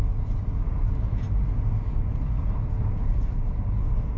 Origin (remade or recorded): recorded